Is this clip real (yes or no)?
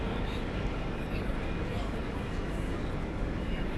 no